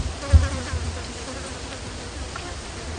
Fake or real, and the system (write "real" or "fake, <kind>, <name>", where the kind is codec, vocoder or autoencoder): real